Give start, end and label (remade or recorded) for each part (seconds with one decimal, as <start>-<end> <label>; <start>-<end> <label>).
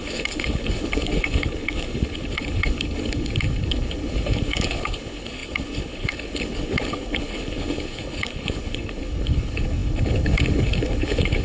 0.0-11.4 remade